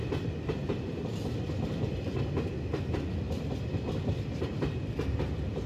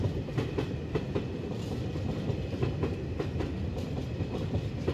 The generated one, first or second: second